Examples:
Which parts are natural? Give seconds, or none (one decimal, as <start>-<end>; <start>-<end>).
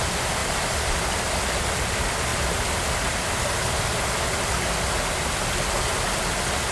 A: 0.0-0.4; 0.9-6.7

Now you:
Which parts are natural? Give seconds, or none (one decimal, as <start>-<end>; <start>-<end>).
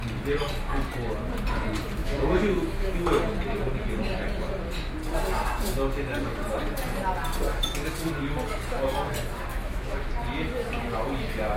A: 0.0-2.0; 2.9-7.5; 8.1-9.5; 10.1-11.6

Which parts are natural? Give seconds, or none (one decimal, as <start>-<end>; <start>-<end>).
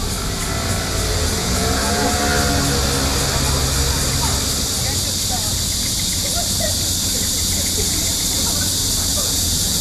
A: 0.0-1.1; 2.2-9.1